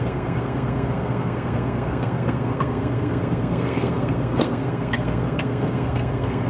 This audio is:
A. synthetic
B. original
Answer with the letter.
A